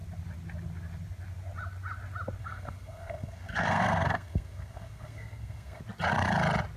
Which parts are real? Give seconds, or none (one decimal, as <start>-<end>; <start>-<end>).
0.0-2.4; 5.8-6.8